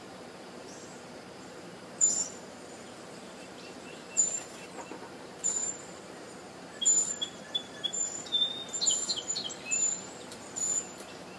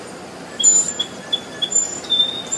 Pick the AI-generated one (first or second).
first